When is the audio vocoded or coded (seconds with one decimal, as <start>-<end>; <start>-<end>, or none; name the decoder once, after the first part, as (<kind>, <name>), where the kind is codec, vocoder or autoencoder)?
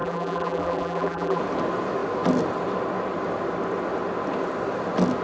0.0-1.4 (vocoder, BigVGAN v2)